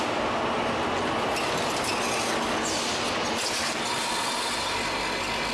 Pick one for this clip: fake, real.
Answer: real